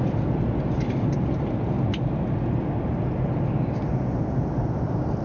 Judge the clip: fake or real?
real